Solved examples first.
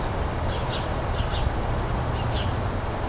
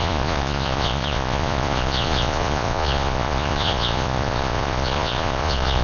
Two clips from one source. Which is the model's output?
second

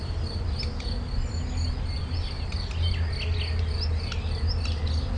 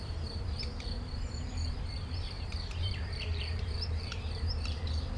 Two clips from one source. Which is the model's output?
second